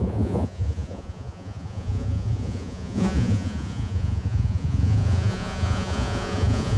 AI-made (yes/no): yes